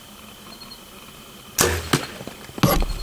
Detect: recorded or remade recorded